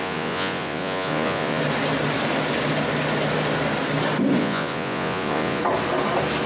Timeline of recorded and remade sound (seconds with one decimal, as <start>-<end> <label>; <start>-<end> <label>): 0.0-1.6 remade; 1.6-4.4 recorded; 4.4-5.6 remade; 5.6-6.5 recorded